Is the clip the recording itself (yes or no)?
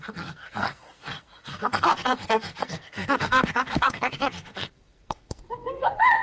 no